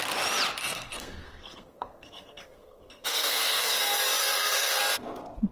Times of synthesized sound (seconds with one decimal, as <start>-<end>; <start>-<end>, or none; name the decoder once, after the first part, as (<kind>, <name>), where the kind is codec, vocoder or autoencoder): 0.6-3.8 (codec, SNAC); 4.2-4.8